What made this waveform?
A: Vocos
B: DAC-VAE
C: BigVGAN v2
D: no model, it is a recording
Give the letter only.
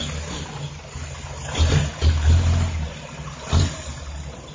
D